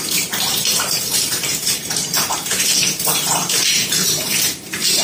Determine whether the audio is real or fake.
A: fake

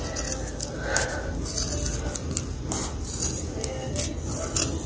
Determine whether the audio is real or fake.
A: real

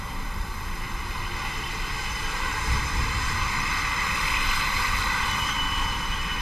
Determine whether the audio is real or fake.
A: fake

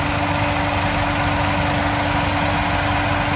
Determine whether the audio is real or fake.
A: real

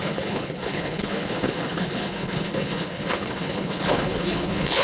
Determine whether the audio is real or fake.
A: fake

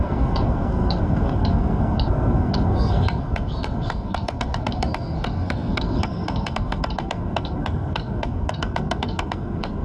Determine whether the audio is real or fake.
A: fake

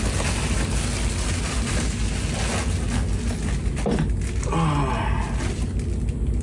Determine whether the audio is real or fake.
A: real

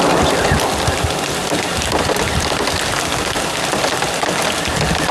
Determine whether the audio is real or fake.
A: real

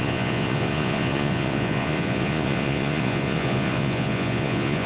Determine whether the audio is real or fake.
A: fake